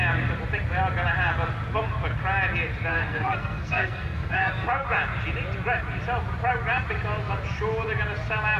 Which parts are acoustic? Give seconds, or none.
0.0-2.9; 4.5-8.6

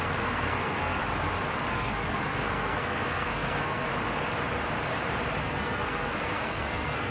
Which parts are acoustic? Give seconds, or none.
1.0-1.7; 3.9-5.4

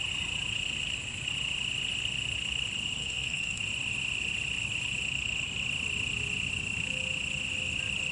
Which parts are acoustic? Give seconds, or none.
0.0-3.0; 3.6-8.1

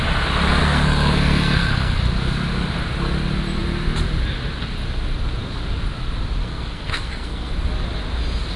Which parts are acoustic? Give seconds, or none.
0.0-0.6; 2.0-6.4; 7.5-8.6

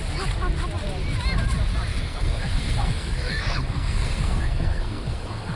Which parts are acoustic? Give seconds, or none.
0.0-1.9

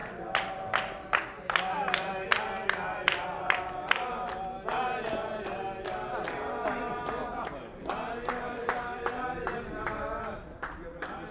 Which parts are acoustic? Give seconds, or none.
0.0-11.3

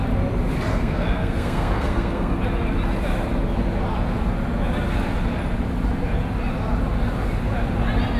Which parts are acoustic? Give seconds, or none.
0.0-0.7; 2.4-8.2

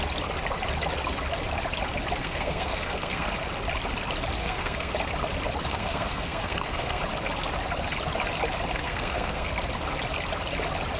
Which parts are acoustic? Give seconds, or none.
0.0-2.2; 3.3-4.4; 4.9-5.7; 7.0-8.8; 9.5-11.0